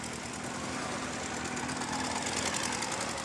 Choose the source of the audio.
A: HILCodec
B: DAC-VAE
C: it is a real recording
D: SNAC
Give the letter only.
C